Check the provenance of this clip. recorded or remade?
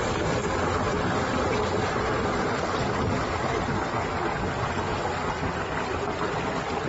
recorded